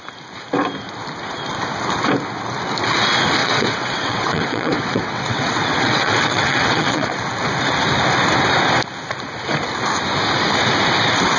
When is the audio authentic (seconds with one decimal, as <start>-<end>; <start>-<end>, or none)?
0.0-3.4; 7.1-11.4